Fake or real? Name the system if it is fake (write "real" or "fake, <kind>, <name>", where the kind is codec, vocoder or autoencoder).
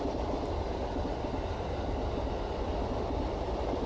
real